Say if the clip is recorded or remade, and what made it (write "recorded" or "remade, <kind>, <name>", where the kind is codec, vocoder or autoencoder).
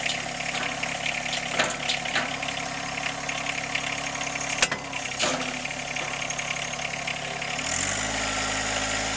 recorded